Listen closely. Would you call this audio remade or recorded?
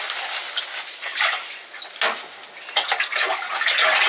recorded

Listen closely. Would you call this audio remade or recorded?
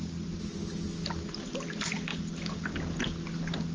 recorded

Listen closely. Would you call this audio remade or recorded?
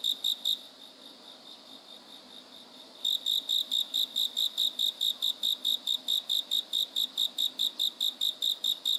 recorded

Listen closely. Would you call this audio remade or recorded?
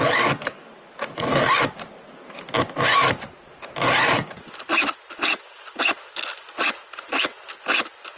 recorded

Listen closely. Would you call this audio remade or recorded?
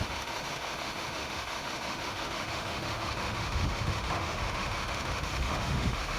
remade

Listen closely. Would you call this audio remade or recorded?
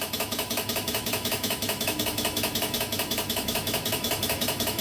remade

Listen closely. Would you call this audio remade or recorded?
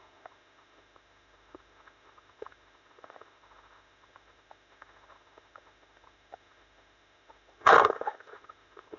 remade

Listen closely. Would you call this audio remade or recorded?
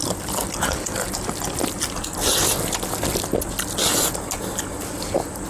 recorded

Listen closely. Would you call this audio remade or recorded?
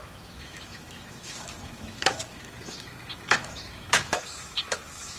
remade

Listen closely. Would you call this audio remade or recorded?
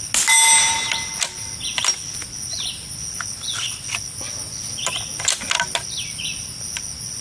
recorded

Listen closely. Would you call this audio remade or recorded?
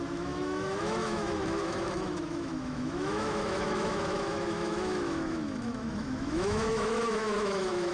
remade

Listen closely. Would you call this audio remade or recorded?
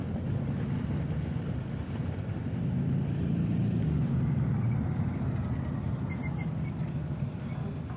recorded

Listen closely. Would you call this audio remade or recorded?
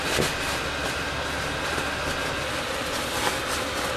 recorded